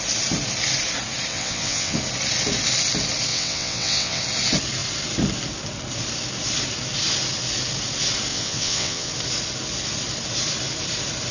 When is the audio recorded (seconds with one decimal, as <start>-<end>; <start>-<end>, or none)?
0.0-1.3; 2.0-3.3; 4.2-8.3; 9.1-11.3

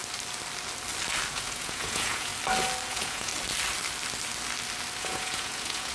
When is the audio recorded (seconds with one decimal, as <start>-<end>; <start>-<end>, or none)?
0.0-1.3; 2.3-2.9; 3.3-5.0

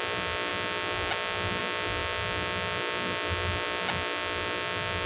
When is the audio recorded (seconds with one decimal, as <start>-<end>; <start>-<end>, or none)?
0.0-5.1

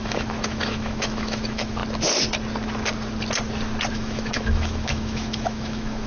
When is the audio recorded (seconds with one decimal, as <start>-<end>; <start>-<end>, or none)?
1.8-3.9

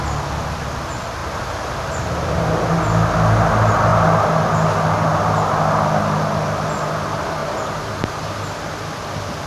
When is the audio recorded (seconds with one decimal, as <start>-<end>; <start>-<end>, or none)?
0.0-1.2; 2.7-7.4; 8.7-9.5